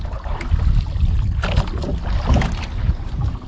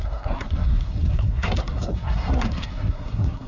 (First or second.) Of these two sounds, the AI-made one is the second